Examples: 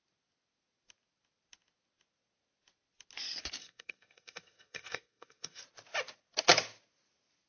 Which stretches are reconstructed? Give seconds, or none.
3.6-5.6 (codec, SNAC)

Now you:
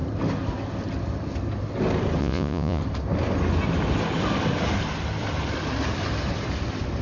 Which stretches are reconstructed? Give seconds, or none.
2.2-2.8 (vocoder, Vocos)

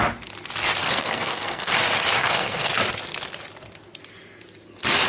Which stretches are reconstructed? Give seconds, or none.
0.8-1.7 (codec, SNAC); 2.2-2.7

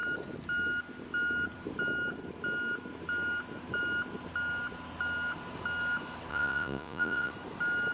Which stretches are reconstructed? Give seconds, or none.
6.3-7.3 (vocoder, Vocos)

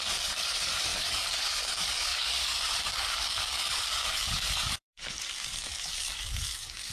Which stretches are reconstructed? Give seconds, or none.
0.0-6.9 (codec, DAC)

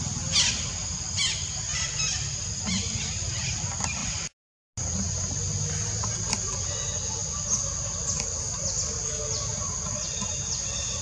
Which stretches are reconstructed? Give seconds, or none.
none

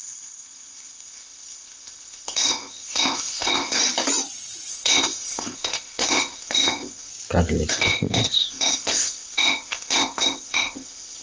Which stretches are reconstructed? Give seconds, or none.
0.0-3.8 (codec, ZipCodec); 4.7-7.1; 7.7-11.2

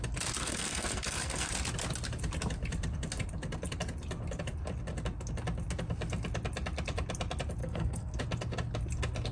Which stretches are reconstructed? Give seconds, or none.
0.4-1.5 (codec, SNAC); 7.6-8.2